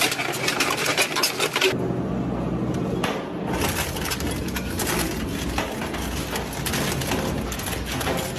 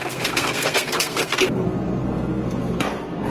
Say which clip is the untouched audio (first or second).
first